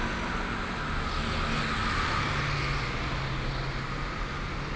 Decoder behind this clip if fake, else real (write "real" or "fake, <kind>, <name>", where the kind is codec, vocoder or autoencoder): real